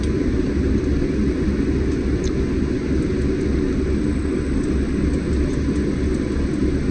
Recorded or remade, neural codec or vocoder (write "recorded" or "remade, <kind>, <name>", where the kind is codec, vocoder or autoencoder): recorded